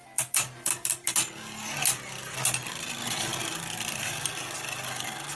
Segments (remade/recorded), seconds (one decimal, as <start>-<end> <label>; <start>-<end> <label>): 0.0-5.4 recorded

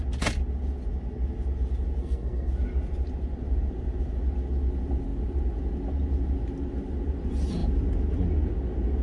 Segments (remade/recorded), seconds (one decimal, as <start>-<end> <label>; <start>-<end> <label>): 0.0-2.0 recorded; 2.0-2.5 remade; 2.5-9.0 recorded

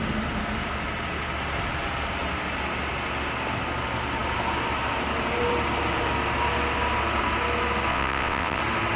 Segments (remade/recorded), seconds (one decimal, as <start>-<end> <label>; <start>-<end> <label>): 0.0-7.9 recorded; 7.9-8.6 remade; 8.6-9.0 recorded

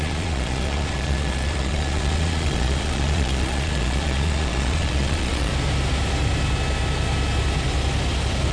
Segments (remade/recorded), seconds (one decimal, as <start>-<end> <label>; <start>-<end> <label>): 0.0-5.5 remade; 5.5-8.5 recorded

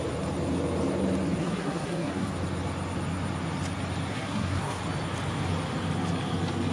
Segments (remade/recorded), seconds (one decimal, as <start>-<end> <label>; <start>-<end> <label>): 0.0-1.4 recorded; 1.4-2.3 remade; 2.3-4.1 recorded; 4.1-4.8 remade; 4.8-6.7 recorded